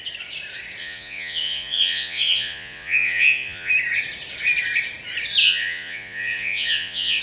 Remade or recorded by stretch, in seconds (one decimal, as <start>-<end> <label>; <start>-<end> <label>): 0.0-0.8 recorded; 0.8-3.7 remade; 3.7-5.4 recorded; 5.4-7.2 remade